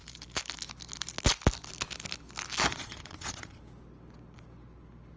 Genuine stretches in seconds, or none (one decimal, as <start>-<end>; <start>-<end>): 0.0-2.7; 3.6-5.2